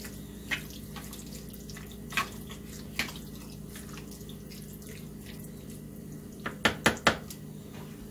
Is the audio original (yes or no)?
yes